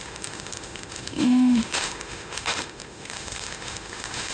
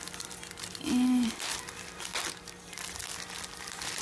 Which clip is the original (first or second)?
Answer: second